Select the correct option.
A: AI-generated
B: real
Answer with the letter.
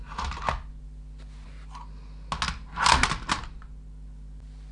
B